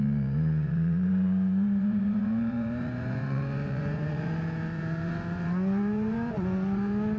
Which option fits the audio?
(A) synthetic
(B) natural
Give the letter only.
A